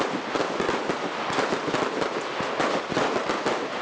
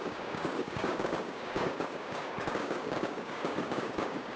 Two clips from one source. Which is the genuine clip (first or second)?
first